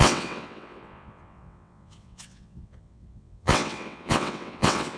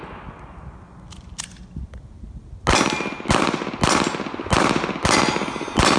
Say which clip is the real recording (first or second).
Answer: second